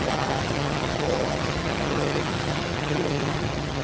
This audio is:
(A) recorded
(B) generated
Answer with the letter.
B